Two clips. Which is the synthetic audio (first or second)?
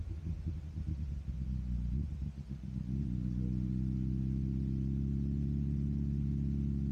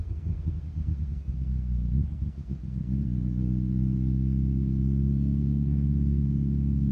second